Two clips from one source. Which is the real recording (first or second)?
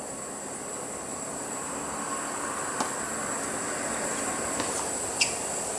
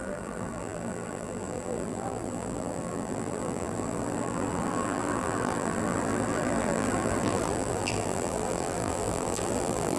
first